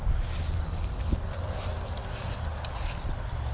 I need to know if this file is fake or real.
real